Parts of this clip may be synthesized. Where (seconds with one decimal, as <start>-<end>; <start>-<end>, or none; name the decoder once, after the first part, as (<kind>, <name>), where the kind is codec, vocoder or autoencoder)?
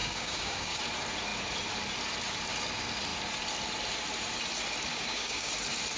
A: 0.0-0.8 (codec, DAC); 4.9-5.5